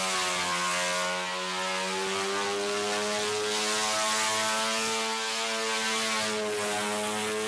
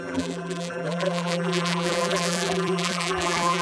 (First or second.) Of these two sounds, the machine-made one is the second